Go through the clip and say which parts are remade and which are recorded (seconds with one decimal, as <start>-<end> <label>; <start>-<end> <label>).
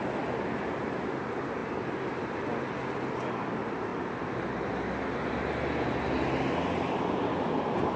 0.0-8.0 recorded